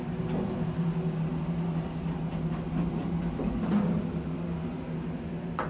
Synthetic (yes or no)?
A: no